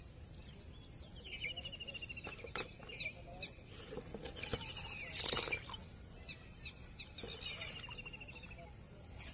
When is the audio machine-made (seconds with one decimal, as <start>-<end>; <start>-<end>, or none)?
none